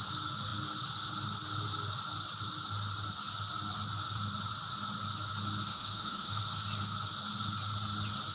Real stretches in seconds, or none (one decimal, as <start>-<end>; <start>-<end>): 0.0-5.7; 6.4-8.3